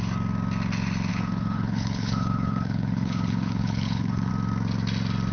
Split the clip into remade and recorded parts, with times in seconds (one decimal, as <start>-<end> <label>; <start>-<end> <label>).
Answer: 0.0-1.1 recorded; 1.1-4.3 remade; 4.3-5.3 recorded